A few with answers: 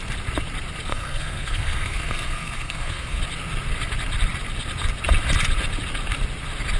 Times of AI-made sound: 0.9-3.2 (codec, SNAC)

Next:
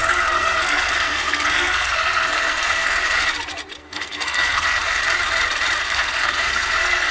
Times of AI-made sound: 0.0-3.3 (codec, SNAC); 3.8-5.0; 5.8-7.1

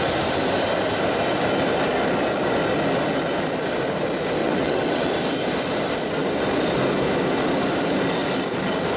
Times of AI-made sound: 4.4-5.1 (vocoder, WaveNeXt)

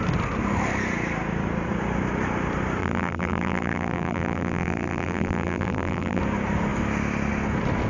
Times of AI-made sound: 2.8-6.2 (vocoder, BigVGAN v2)

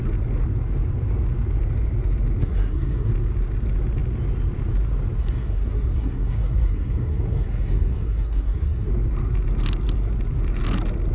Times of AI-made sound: 2.4-3.1 (codec, SNAC); 5.2-8.9